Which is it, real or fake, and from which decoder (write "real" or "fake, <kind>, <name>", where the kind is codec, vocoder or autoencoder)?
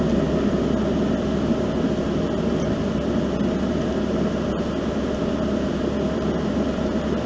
real